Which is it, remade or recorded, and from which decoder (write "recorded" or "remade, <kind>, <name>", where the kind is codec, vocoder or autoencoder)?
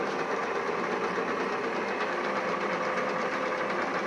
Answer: recorded